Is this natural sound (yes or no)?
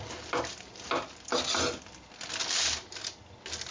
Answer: yes